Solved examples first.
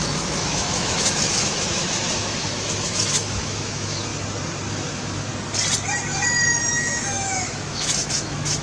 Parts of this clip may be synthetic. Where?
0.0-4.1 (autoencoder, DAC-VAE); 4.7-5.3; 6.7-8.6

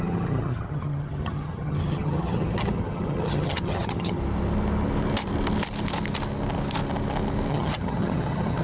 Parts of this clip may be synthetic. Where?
0.0-4.2 (vocoder, HiFi-GAN); 7.5-8.6

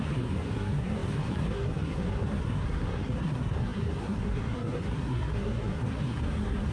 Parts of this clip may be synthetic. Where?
0.0-6.7 (codec, SNAC)

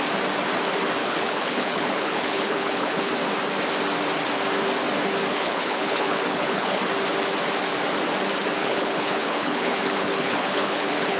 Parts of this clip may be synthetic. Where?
1.0-3.1 (codec, HILCodec); 5.3-6.8; 8.6-11.2